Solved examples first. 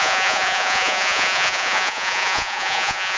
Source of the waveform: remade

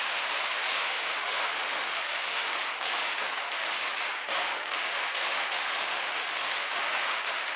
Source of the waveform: remade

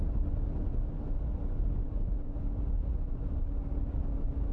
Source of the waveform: recorded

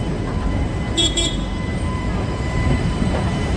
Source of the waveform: remade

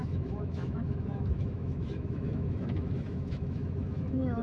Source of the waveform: remade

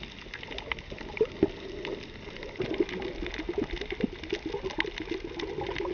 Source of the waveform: recorded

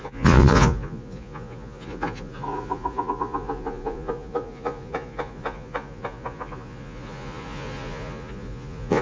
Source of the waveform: remade